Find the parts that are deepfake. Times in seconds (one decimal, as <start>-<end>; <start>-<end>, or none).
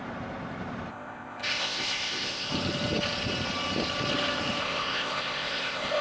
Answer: 0.9-2.5; 4.6-6.0